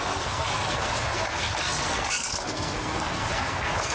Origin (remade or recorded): remade